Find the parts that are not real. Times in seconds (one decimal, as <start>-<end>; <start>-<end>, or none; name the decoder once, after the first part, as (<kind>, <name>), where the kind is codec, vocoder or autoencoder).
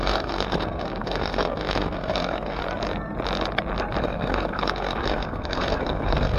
0.0-2.6 (codec, SNAC); 4.0-6.4